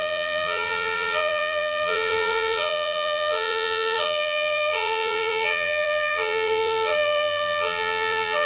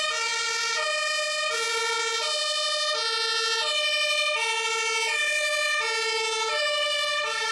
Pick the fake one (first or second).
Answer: first